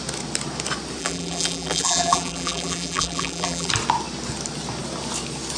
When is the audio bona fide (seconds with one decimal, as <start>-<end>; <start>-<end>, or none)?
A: 0.0-1.0; 3.7-5.6